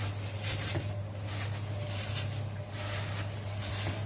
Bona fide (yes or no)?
yes